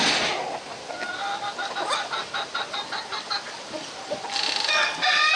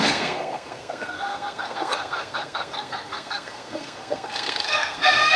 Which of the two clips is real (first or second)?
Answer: first